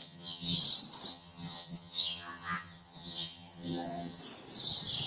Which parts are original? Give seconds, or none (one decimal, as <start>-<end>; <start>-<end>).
0.6-1.1; 4.2-5.1